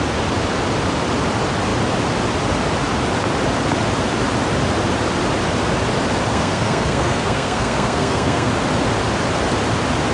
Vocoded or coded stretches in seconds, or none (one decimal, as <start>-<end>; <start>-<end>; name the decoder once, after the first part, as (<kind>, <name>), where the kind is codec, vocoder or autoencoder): 6.3-8.5 (codec, SNAC)